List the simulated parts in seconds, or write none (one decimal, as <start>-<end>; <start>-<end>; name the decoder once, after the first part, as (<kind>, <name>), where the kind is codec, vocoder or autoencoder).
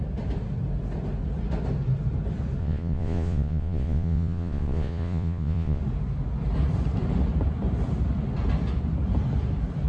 2.6-5.8 (vocoder, Vocos)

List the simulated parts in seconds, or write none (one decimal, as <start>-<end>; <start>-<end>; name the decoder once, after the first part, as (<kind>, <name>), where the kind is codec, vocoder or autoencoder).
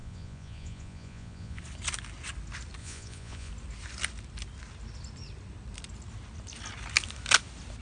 0.0-1.6 (vocoder, Vocos); 2.8-3.5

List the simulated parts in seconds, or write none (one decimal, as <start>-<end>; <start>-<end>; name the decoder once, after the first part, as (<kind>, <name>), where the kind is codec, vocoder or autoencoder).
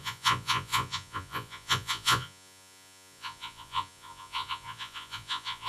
0.0-5.7 (vocoder, Vocos)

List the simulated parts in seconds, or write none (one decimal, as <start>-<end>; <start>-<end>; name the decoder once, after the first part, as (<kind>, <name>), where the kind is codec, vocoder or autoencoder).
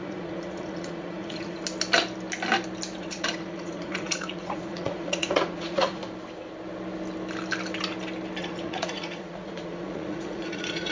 0.0-1.6 (vocoder, Vocos); 3.0-6.0; 8.4-10.9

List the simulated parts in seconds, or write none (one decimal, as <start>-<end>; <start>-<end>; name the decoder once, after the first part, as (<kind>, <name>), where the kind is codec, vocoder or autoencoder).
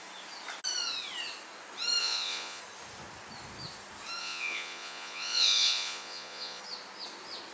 2.0-2.6 (vocoder, Vocos); 4.2-6.6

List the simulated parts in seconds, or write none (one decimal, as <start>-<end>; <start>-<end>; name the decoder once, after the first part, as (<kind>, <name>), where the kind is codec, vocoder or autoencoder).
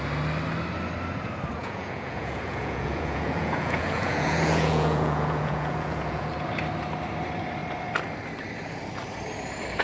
1.6-6.3 (vocoder, Vocos)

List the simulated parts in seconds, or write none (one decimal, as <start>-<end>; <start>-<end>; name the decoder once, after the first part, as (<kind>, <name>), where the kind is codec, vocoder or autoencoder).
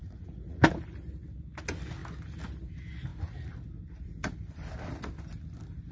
0.0-0.7 (vocoder, Vocos)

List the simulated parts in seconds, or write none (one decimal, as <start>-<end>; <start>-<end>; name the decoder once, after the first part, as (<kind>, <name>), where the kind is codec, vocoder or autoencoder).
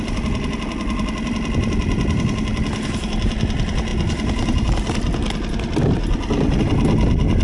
none